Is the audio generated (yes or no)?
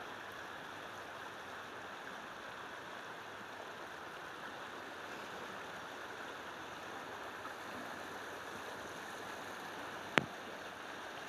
no